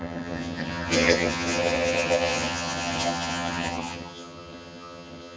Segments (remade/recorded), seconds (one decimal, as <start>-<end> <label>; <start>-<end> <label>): 0.0-5.4 remade